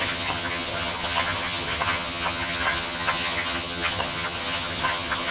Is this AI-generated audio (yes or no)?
yes